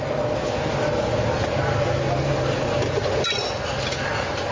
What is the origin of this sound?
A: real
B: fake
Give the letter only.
A